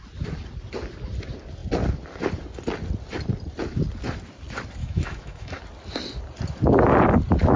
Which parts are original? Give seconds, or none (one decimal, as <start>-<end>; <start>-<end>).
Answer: 0.0-4.8; 5.6-7.6